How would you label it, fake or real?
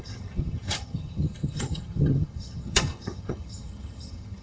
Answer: fake